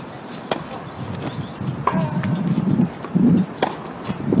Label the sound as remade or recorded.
recorded